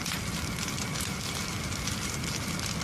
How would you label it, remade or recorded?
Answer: recorded